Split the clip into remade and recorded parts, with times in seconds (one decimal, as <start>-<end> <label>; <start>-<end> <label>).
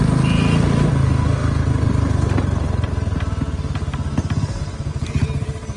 0.0-5.8 recorded